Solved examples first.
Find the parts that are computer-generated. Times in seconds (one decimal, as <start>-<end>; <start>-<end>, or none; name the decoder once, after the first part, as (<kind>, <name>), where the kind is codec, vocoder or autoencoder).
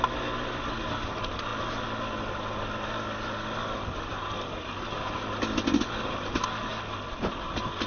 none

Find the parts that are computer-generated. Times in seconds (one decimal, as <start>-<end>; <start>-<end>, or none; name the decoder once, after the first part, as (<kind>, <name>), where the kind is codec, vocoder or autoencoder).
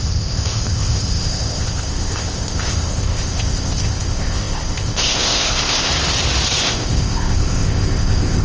0.0-5.9 (codec, ZipCodec); 6.6-8.4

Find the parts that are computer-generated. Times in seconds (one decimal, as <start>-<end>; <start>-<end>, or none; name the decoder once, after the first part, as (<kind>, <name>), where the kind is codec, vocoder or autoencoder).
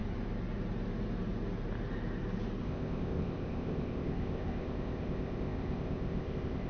2.6-6.7 (codec, ZipCodec)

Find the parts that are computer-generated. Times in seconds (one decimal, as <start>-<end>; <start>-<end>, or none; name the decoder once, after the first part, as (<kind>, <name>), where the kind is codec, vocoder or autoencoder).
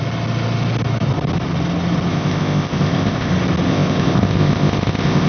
2.1-3.3 (codec, ZipCodec); 3.7-5.3